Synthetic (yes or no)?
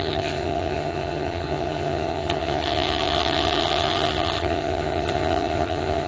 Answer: yes